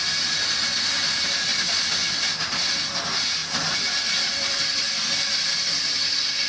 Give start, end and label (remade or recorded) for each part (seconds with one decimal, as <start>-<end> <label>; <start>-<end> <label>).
0.0-6.5 recorded